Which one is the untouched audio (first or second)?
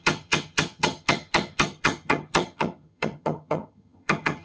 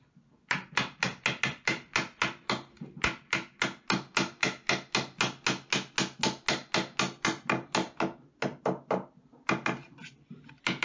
second